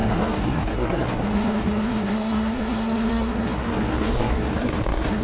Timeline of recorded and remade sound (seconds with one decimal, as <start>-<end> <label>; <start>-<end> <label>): 0.0-5.2 remade